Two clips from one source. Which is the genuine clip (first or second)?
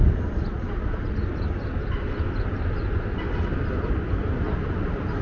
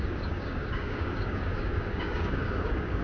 first